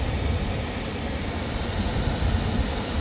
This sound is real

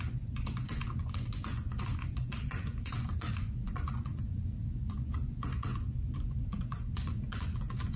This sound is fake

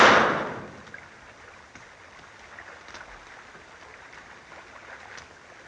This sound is real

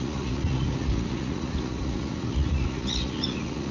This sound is fake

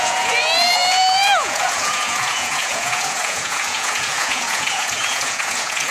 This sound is fake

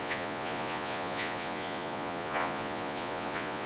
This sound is fake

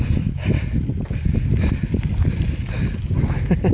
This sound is real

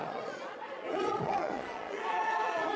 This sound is fake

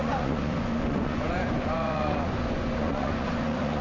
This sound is fake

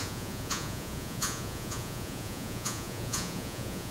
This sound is fake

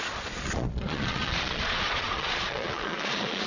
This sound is fake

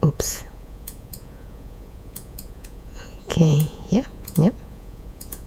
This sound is fake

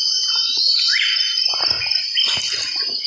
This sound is real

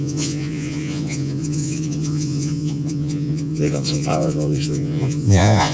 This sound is fake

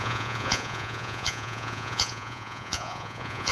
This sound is fake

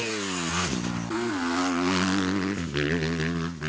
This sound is real